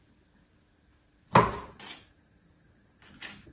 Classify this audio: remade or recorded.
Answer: recorded